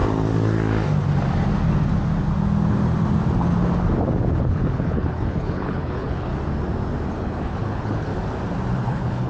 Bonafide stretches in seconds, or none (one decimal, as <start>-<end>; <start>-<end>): 0.0-4.4; 6.3-7.2; 8.1-8.7